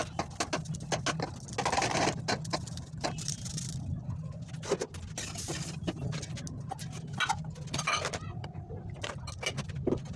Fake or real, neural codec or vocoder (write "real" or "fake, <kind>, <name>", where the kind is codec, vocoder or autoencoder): real